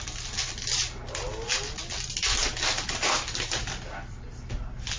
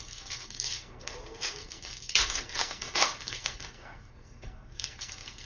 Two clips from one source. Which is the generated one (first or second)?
second